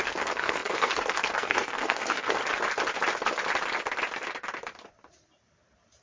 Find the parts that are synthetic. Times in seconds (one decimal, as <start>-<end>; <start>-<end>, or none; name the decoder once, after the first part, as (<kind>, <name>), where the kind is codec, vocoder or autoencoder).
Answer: 0.0-2.4 (codec, SNAC)